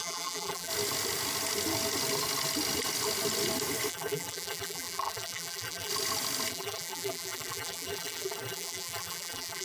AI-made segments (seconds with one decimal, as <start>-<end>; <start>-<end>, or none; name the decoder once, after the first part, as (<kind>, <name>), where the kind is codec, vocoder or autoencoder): 0.0-0.7 (vocoder, BigVGAN v2); 3.9-5.9; 6.5-9.6